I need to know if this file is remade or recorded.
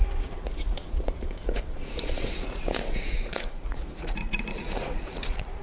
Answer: remade